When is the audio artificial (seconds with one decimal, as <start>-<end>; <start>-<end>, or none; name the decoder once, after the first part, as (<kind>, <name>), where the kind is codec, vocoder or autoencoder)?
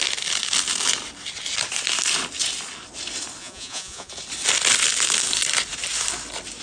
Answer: 3.4-4.1 (vocoder, Vocos)